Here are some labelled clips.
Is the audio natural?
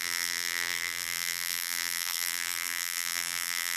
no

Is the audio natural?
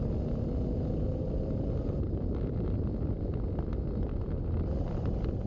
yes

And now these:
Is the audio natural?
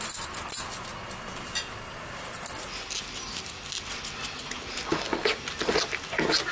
yes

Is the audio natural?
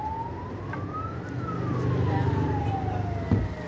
yes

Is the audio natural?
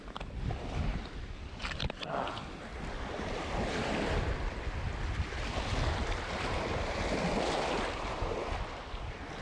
yes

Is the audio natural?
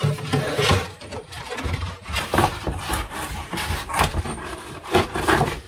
no